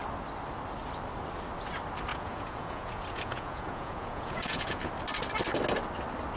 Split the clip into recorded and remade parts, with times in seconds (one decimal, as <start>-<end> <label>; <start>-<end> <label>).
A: 0.0-2.1 recorded; 2.1-4.9 remade; 4.9-6.4 recorded

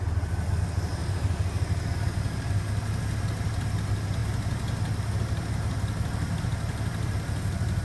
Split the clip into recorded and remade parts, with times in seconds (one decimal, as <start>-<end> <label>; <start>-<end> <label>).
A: 0.0-7.8 recorded

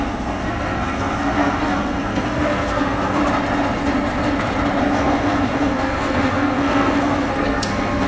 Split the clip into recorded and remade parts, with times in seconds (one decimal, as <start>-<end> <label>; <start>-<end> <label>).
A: 0.0-3.2 remade; 3.2-4.8 recorded; 4.8-8.1 remade

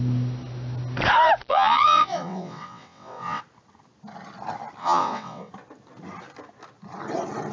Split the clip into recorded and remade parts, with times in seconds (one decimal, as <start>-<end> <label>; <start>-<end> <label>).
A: 0.0-1.5 recorded; 1.5-3.4 remade; 3.4-4.8 recorded; 4.8-5.5 remade; 5.5-7.5 recorded